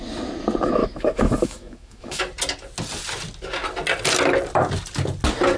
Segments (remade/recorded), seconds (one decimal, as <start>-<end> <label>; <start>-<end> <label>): 0.0-0.8 recorded; 0.8-2.2 remade; 2.2-5.6 recorded